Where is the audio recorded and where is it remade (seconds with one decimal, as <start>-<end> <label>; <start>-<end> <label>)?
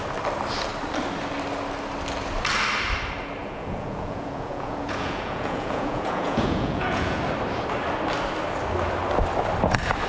0.0-3.4 recorded; 3.4-7.2 remade; 7.2-10.1 recorded